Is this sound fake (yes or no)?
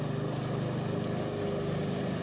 no